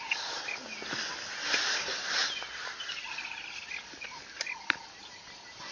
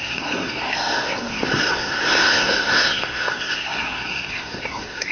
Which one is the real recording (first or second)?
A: first